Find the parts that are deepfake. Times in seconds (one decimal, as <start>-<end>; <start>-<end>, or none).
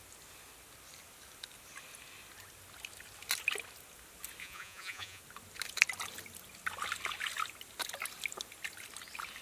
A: 4.4-5.2